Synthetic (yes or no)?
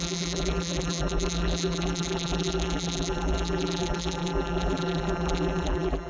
yes